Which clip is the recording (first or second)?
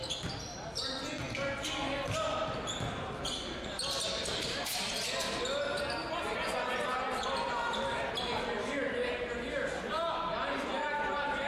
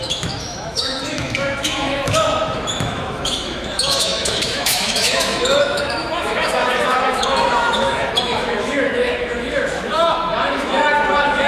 first